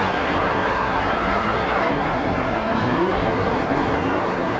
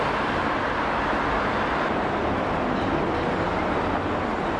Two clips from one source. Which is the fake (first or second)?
first